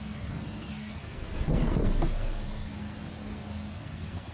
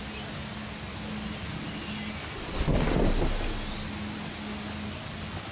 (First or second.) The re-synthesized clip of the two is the first